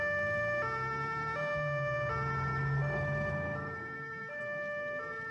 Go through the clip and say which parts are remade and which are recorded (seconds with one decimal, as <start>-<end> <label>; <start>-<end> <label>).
0.0-2.5 recorded; 2.5-4.4 remade; 4.4-5.3 recorded